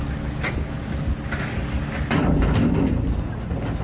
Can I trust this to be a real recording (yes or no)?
yes